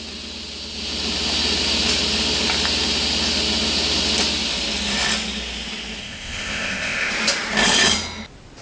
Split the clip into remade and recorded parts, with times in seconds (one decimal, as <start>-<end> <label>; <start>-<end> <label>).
0.0-6.0 recorded; 6.0-7.1 remade; 7.1-8.6 recorded